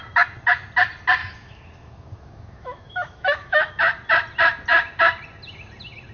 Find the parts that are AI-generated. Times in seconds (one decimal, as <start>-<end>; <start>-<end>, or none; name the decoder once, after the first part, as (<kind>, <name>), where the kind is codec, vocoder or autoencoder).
1.2-3.7 (autoencoder, DAC-VAE)

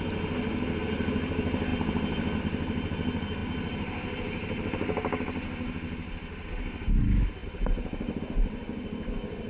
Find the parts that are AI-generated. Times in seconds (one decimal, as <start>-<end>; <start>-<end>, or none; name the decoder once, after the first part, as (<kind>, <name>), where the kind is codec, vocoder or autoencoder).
none

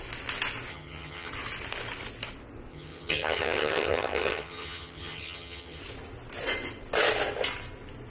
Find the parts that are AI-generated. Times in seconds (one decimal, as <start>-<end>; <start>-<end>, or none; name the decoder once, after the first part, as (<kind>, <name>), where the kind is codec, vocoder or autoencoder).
0.7-1.3 (vocoder, HiFi-GAN); 2.7-5.8